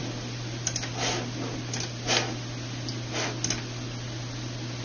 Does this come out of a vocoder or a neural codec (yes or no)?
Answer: no